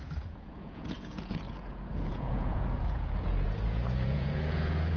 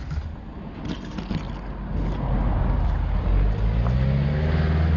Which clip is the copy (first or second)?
first